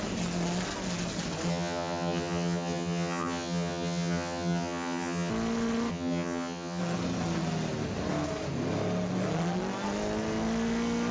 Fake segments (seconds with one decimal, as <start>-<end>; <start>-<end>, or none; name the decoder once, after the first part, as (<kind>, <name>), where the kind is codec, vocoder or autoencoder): 1.5-5.3 (vocoder, HiFi-GAN); 5.9-6.8